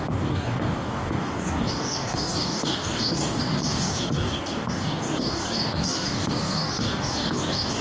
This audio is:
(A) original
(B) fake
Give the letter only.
B